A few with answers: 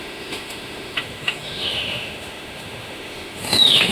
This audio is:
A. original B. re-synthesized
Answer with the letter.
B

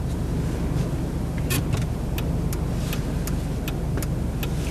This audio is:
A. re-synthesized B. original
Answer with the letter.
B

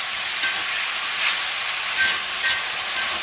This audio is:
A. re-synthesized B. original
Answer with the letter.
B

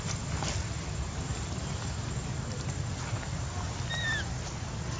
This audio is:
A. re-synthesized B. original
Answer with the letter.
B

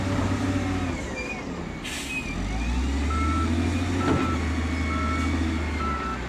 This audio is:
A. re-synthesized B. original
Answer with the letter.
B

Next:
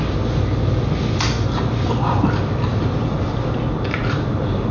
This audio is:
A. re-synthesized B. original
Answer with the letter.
B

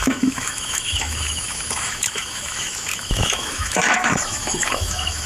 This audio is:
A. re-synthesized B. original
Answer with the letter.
A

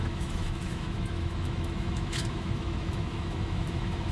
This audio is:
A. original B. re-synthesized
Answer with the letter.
B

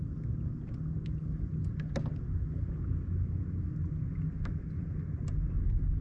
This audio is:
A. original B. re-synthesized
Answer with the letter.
A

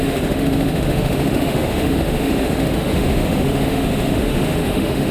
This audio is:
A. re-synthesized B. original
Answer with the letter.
A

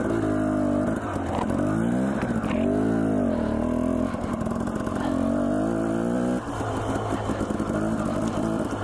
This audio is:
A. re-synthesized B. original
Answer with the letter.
B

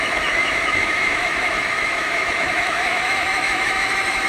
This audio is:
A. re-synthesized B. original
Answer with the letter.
A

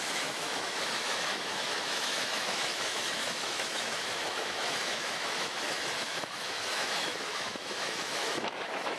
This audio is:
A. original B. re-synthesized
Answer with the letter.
B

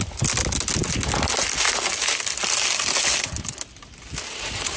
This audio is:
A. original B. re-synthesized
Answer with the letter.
A